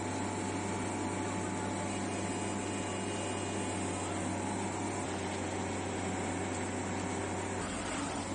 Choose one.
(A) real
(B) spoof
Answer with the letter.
A